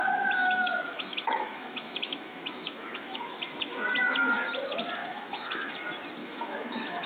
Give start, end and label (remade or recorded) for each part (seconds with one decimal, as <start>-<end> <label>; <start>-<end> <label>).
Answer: 0.0-0.4 recorded; 0.4-3.2 remade; 3.2-5.0 recorded; 5.0-5.7 remade; 5.7-6.2 recorded; 6.2-7.1 remade